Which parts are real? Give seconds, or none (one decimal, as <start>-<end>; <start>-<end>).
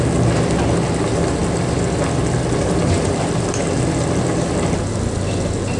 0.0-5.8